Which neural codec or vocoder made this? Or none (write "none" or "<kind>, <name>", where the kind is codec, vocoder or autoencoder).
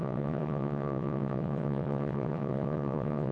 vocoder, WaveNeXt